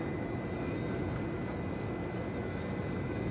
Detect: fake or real real